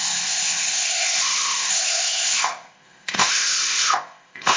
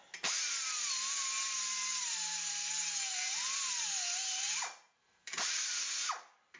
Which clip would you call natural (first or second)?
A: second